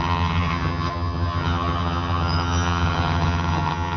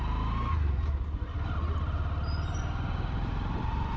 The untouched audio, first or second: second